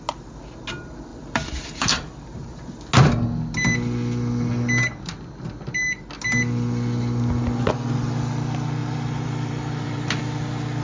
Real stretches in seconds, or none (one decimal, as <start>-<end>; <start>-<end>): 0.0-1.1; 2.9-8.8; 10.2-10.8